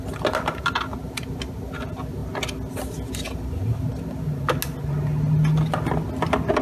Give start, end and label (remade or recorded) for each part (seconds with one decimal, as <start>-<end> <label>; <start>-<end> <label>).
0.0-6.6 recorded